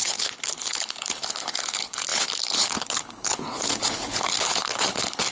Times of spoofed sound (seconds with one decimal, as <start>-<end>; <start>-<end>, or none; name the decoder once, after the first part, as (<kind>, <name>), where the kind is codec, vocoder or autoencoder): 0.0-5.3 (codec, HILCodec)